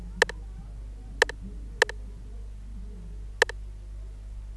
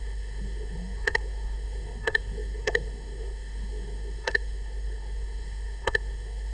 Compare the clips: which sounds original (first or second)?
first